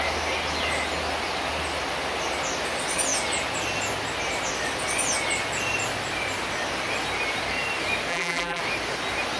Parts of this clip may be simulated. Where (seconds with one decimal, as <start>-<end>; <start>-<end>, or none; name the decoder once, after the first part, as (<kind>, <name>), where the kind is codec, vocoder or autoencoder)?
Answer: 8.1-8.6 (vocoder, BigVGAN v2)